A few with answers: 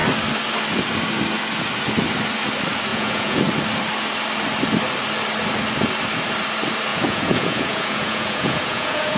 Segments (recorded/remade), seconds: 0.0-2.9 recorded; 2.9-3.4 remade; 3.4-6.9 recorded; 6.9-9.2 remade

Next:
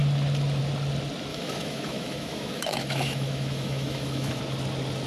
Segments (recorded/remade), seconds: 0.0-1.3 recorded; 1.3-4.4 remade; 4.4-5.1 recorded

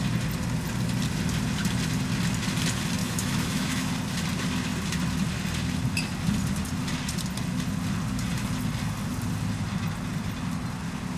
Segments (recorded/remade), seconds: 0.0-3.0 recorded; 3.0-3.9 remade; 3.9-11.2 recorded

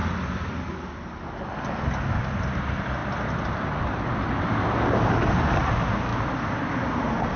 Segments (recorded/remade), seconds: 0.0-2.3 recorded; 2.3-6.1 remade; 6.1-6.9 recorded; 6.9-7.4 remade